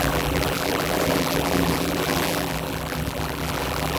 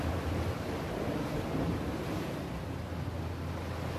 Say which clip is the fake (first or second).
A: first